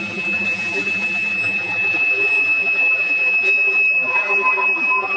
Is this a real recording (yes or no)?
no